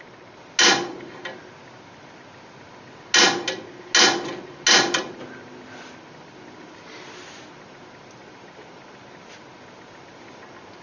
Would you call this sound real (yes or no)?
yes